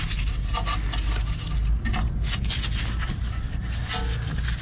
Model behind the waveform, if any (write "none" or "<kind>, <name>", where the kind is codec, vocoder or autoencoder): none